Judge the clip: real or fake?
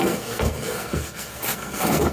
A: fake